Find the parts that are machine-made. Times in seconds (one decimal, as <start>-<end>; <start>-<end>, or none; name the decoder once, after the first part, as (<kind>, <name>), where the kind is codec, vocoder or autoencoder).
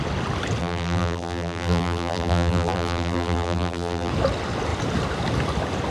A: 0.6-4.1 (vocoder, BigVGAN v2)